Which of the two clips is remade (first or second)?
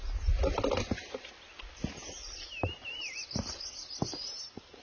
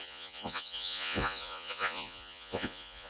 second